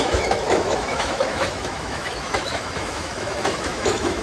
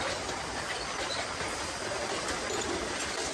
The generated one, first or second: first